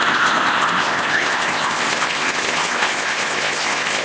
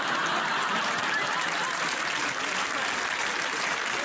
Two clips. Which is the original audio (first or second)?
second